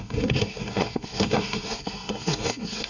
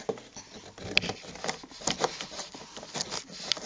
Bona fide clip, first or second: second